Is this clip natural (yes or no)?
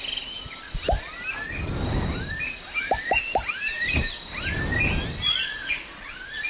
yes